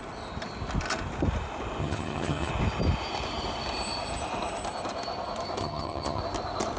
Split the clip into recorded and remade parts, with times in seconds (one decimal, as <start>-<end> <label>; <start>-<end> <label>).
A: 0.0-1.8 recorded; 1.8-2.5 remade; 2.5-5.6 recorded; 5.6-6.2 remade; 6.2-6.8 recorded